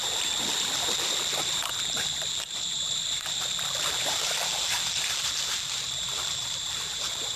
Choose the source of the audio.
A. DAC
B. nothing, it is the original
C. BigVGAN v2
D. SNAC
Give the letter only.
C